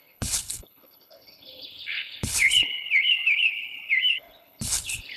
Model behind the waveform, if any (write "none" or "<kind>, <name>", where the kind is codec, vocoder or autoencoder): codec, HILCodec